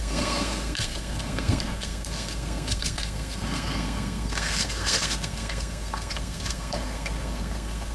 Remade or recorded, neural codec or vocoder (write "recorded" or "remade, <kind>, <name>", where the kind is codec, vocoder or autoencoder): remade, codec, SNAC